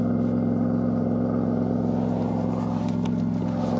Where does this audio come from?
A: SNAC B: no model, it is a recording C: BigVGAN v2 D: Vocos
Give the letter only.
B